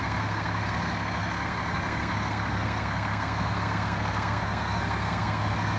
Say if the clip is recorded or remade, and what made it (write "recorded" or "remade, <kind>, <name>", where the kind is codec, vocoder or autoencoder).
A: remade, codec, SNAC